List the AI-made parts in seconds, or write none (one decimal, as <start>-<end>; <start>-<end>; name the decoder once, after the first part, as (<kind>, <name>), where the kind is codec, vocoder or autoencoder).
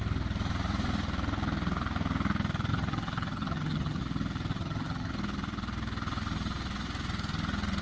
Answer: 2.7-4.0 (vocoder, HiFi-GAN); 4.5-5.1